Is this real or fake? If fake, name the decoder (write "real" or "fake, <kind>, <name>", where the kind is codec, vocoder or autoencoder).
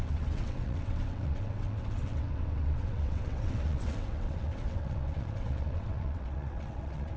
fake, vocoder, WaveNeXt